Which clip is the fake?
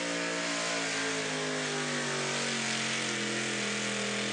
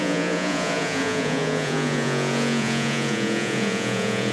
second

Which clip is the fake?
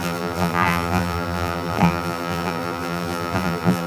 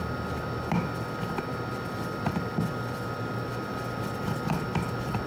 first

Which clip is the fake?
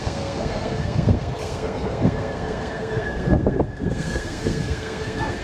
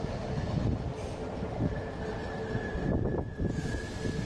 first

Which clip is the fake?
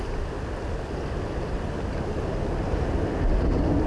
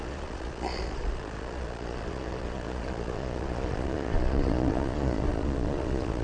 second